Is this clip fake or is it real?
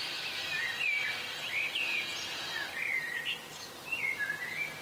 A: real